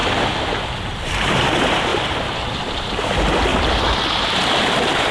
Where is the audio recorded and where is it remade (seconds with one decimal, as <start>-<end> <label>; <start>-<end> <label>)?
0.0-3.5 remade; 3.5-4.6 recorded; 4.6-5.1 remade